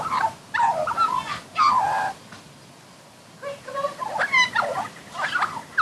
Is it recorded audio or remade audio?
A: recorded